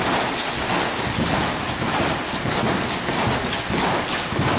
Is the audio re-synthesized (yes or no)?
no